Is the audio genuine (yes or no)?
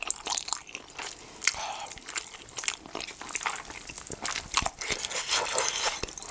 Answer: yes